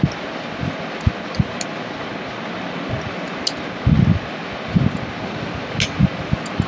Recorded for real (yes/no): yes